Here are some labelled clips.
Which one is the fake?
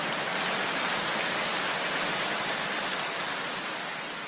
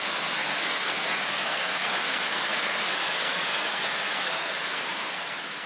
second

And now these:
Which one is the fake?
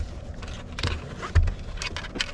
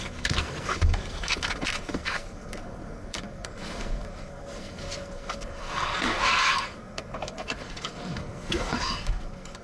second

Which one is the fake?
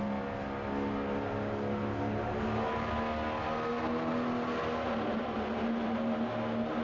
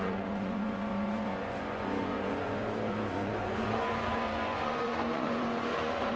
second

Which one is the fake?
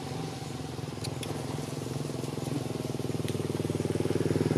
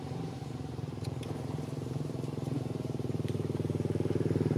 second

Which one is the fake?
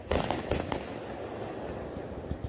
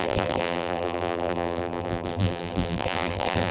second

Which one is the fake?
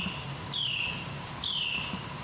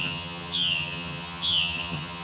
second